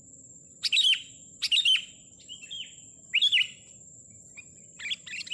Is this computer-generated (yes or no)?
no